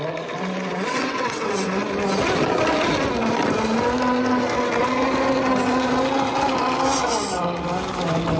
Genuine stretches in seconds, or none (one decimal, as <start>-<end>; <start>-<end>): 0.0-0.7; 1.8-8.4